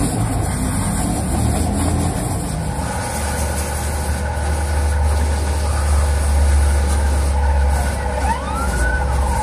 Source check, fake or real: real